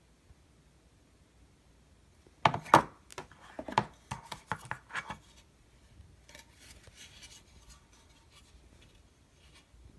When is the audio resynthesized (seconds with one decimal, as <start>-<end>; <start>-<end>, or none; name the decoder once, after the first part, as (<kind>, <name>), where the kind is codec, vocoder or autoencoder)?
none